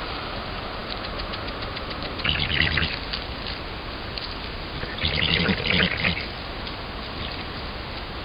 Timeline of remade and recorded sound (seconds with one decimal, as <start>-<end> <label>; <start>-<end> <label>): 0.0-8.2 recorded